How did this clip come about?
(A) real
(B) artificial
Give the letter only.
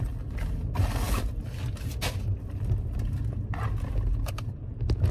A